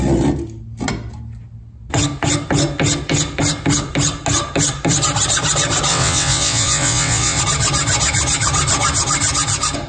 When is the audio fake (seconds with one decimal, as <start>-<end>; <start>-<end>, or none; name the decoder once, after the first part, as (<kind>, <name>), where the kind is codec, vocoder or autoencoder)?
5.9-7.4 (vocoder, WaveNeXt)